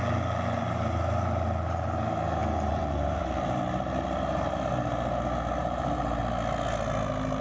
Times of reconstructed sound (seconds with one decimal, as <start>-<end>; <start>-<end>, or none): 2.4-3.6; 5.6-6.2